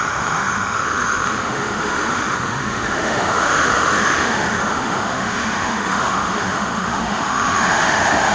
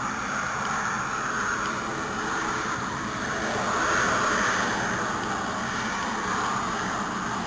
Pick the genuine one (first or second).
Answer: second